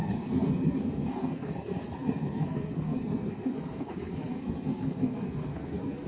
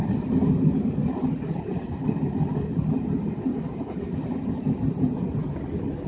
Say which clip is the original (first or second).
second